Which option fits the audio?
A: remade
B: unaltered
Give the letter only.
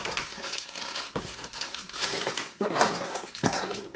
A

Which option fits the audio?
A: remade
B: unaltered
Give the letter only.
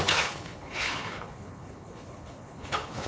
A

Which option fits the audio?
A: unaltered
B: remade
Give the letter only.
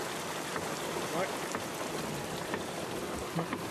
A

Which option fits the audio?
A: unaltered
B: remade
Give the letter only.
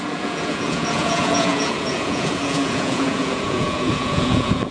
B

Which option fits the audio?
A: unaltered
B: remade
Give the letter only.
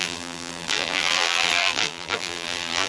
B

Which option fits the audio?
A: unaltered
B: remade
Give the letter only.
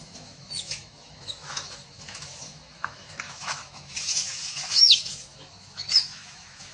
B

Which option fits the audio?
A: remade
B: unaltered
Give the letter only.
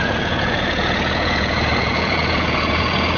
A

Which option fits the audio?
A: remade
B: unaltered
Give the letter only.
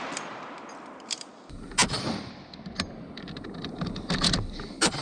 B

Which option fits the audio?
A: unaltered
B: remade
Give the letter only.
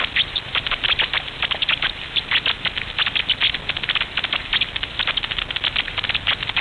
A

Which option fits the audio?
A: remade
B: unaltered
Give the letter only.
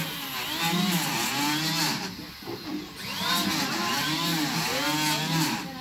B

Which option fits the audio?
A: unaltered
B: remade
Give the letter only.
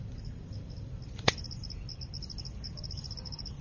B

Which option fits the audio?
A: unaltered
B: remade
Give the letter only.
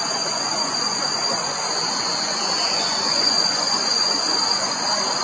B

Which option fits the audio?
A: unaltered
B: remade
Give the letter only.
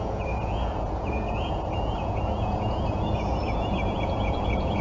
B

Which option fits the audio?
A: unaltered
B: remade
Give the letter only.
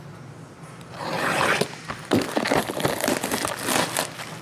A